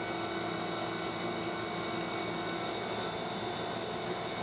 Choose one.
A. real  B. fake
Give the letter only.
A